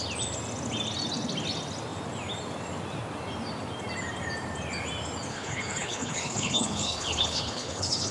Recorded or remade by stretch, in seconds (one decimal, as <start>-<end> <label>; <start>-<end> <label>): 0.0-5.3 recorded; 5.3-8.1 remade